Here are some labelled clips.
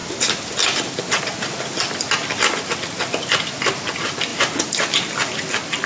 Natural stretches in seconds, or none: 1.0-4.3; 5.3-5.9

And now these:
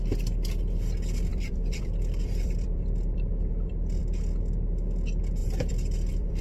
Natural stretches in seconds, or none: 0.0-1.3; 4.0-5.4

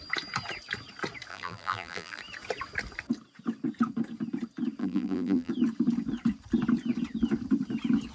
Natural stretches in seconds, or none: 0.0-1.3; 2.2-4.8; 5.5-8.1

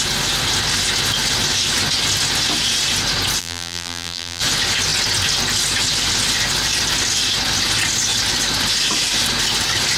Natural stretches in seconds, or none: 0.0-3.4; 4.4-10.0

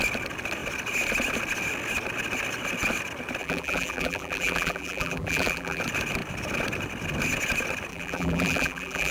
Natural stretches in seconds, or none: 0.0-3.4; 5.8-7.9

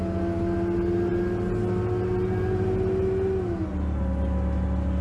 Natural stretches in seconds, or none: 0.0-5.0